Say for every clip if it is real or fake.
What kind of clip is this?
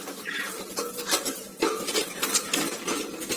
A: fake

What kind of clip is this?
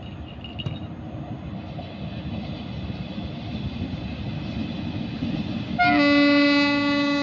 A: real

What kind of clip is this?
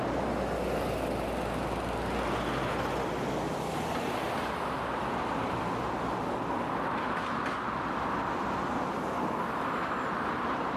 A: real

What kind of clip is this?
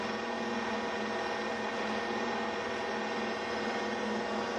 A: real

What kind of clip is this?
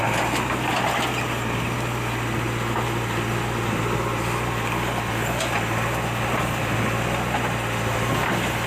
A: real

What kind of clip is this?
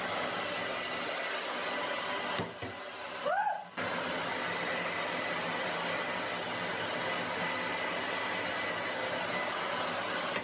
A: real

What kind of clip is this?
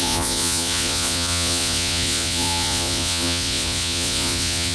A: fake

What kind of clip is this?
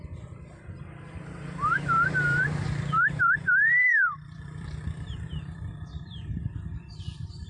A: fake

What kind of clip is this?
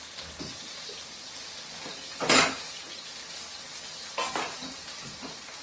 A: real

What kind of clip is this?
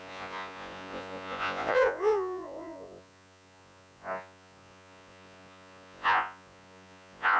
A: fake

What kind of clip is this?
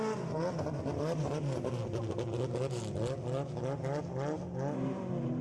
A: real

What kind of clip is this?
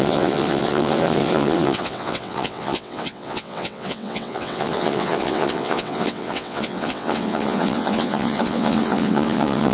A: fake